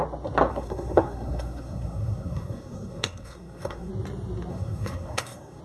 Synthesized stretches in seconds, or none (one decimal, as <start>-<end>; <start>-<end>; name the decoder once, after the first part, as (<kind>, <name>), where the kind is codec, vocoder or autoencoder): 0.5-3.9 (codec, SNAC); 4.5-5.6